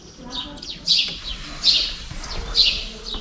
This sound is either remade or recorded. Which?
recorded